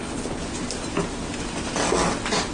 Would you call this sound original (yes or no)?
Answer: yes